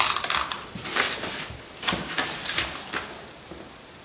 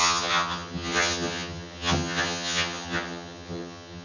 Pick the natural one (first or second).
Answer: first